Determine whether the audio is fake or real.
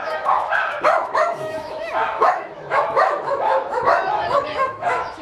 fake